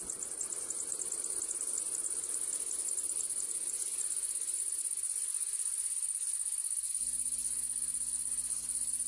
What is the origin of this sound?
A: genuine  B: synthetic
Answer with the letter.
A